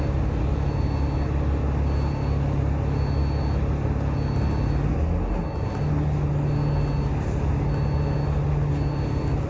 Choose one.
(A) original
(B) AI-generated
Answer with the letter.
A